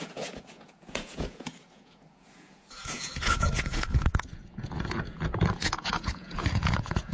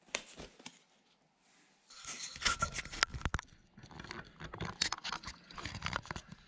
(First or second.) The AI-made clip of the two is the first